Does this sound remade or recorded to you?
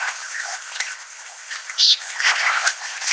remade